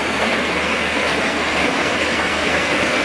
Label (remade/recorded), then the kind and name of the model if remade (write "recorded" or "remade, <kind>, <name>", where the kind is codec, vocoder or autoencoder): remade, codec, SNAC